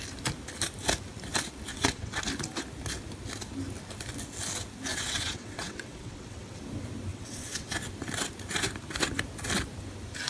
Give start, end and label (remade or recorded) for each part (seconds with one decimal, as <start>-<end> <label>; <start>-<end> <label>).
0.0-1.7 recorded; 1.7-2.2 remade; 2.2-4.9 recorded; 4.9-6.6 remade; 6.6-7.1 recorded; 7.1-7.7 remade; 7.7-10.3 recorded